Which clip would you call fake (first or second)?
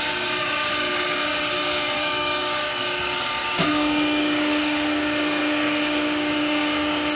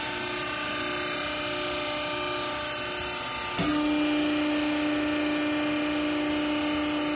first